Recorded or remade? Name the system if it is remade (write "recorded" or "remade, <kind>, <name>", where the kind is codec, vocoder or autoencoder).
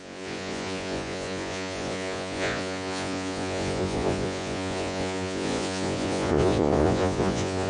remade, vocoder, Vocos